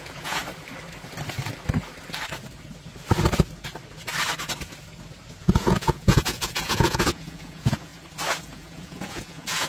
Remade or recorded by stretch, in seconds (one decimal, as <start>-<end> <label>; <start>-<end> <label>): 0.0-0.4 remade; 0.4-5.4 recorded; 5.4-7.9 remade; 7.9-8.4 recorded; 8.4-9.7 remade